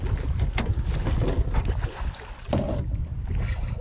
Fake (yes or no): no